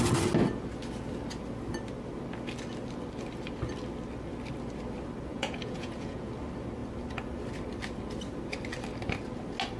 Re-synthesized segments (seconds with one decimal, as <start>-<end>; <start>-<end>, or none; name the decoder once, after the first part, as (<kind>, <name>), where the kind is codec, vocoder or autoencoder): 5.3-6.3 (vocoder, Vocos)